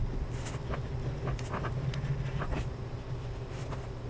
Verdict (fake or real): real